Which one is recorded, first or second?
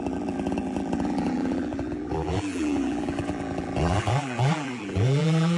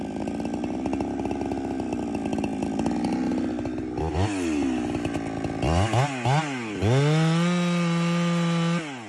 second